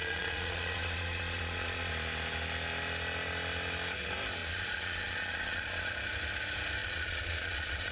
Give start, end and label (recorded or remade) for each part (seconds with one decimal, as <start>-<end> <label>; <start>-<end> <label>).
0.0-1.9 remade; 1.9-4.4 recorded; 4.4-5.9 remade; 5.9-6.8 recorded; 6.8-7.9 remade